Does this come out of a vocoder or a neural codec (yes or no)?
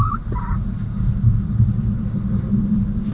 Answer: no